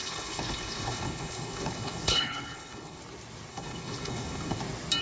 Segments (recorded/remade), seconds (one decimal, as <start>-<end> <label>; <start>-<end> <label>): 0.0-3.0 remade; 3.0-3.5 recorded; 3.5-4.6 remade; 4.6-5.0 recorded